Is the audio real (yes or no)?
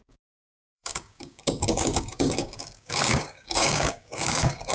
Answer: no